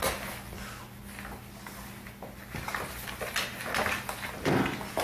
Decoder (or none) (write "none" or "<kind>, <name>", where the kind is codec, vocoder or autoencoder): none